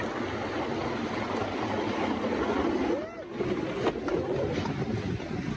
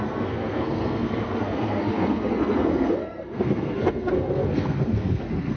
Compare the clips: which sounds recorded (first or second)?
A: first